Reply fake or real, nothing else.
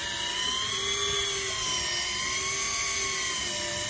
real